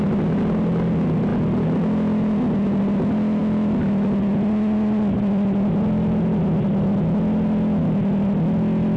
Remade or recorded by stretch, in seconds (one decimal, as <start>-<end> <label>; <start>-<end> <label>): 0.0-9.0 recorded